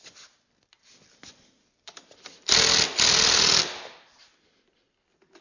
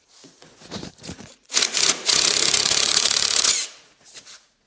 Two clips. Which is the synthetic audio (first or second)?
second